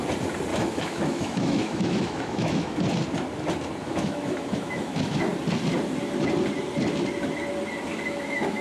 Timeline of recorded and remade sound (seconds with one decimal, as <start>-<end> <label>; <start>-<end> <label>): 0.0-0.5 recorded; 0.5-2.8 remade; 2.8-3.8 recorded; 3.8-5.2 remade; 5.2-7.9 recorded; 7.9-8.6 remade

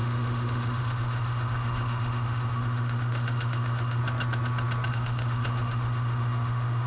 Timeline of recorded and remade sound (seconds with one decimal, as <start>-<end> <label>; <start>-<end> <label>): 0.0-4.0 remade; 4.0-4.9 recorded; 4.9-6.9 remade

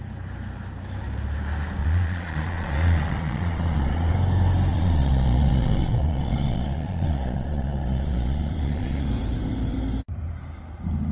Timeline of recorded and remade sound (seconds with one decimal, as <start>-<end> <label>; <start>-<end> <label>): 0.0-1.8 recorded; 1.8-4.1 remade; 4.1-4.7 recorded; 4.7-9.1 remade; 9.1-11.1 recorded

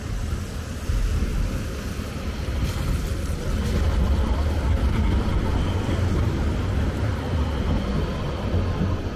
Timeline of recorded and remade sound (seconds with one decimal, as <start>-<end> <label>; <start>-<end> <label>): 0.0-1.3 recorded; 1.3-6.2 remade; 6.2-9.2 recorded

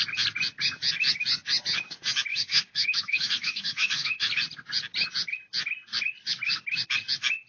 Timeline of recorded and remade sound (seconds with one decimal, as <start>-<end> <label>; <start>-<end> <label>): 0.0-2.3 recorded; 2.3-4.3 remade; 4.3-7.5 recorded

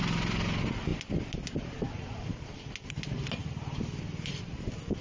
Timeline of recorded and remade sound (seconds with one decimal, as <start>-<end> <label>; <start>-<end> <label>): 0.0-5.0 recorded